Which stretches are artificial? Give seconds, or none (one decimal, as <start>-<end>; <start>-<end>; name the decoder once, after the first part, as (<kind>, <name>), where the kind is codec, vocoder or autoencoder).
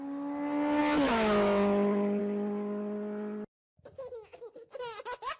none